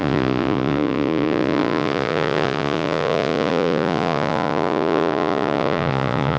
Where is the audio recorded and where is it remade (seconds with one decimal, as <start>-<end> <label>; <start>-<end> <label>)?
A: 0.0-6.4 remade